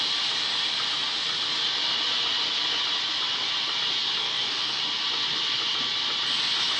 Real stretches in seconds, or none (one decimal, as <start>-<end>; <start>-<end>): 0.0-4.2; 4.8-6.8